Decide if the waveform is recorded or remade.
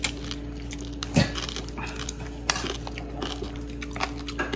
recorded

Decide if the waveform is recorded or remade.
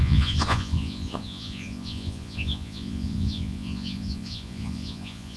remade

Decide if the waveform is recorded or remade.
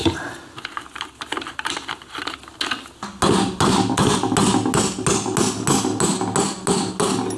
recorded